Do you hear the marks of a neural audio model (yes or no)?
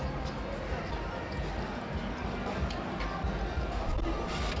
no